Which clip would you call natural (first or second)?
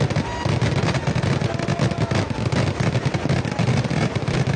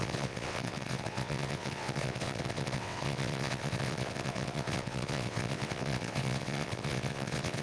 first